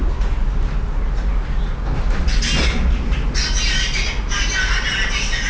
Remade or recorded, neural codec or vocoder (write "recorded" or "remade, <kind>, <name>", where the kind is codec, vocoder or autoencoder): recorded